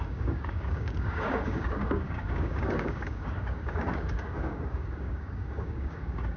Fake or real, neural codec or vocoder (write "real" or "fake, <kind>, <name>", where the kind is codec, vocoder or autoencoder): fake, codec, DAC